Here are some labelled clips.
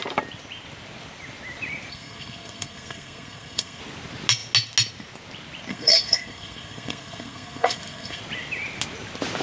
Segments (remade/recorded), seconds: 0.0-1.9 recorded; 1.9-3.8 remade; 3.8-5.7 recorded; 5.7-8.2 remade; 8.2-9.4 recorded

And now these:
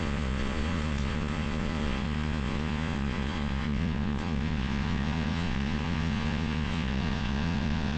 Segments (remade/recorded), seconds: 0.0-8.0 remade

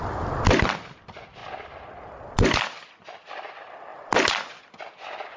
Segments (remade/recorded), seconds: 0.0-5.4 recorded

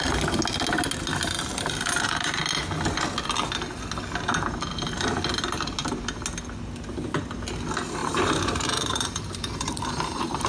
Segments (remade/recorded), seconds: 0.0-1.5 recorded; 1.5-2.4 remade; 2.4-8.0 recorded; 8.0-10.5 remade

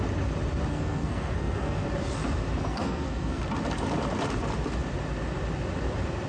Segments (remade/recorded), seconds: 0.0-0.7 recorded; 0.7-1.8 remade; 1.8-2.7 recorded; 2.7-3.4 remade; 3.4-6.3 recorded

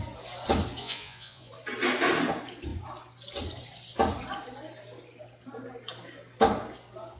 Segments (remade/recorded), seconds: 0.0-0.8 recorded; 0.8-1.5 remade; 1.5-7.2 recorded